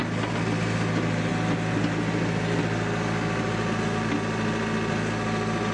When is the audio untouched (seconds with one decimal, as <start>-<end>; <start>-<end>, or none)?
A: 0.0-5.7

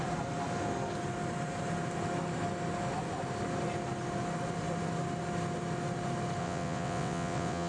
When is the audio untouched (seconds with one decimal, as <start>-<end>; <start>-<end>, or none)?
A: 0.0-6.4

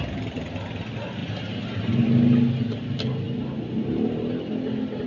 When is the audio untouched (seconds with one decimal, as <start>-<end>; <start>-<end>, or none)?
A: 0.0-5.1

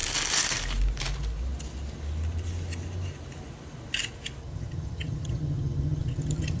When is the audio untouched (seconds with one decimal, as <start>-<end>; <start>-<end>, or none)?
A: 0.0-4.4

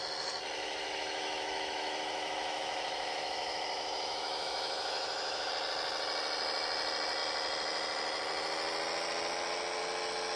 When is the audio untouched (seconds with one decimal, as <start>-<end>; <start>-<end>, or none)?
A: 0.0-0.6; 5.5-10.4